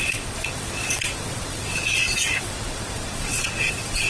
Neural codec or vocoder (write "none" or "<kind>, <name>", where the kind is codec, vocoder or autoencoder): vocoder, WaveNeXt